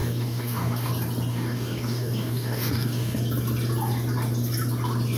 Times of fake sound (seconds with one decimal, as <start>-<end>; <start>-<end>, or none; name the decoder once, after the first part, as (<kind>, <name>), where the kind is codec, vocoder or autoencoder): 0.0-0.9 (codec, DAC); 1.3-3.2